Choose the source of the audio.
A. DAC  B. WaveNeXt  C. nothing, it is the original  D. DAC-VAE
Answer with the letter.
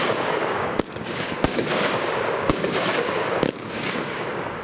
A